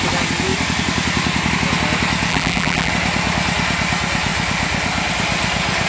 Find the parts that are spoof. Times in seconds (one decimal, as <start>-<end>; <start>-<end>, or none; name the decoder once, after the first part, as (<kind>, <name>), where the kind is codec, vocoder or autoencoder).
2.3-2.9 (vocoder, BigVGAN v2)